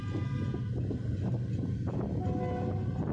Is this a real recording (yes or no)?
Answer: yes